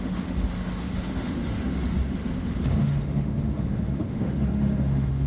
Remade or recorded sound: remade